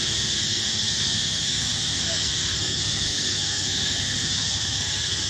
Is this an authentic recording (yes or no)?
no